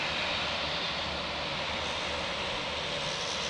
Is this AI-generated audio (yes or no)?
no